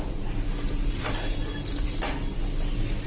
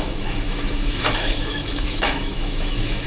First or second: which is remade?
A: second